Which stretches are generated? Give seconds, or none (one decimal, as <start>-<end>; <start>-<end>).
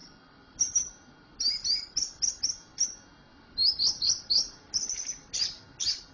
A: none